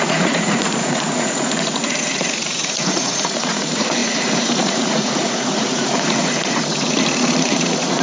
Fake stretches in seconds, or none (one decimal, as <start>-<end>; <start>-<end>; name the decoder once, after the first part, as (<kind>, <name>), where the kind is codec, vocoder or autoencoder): 0.0-8.0 (vocoder, Vocos)